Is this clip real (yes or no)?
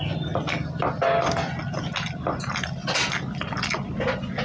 yes